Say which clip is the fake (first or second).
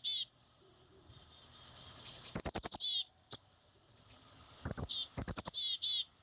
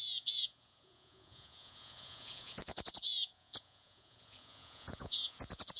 second